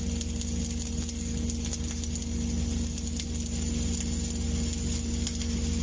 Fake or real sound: real